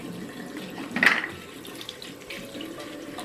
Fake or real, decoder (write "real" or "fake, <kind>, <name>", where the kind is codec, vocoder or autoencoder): real